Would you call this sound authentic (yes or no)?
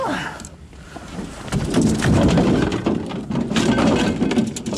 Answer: yes